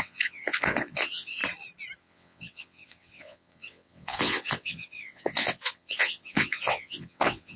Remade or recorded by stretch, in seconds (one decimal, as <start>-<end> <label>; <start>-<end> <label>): 0.0-1.4 remade; 1.4-2.0 recorded; 2.0-7.6 remade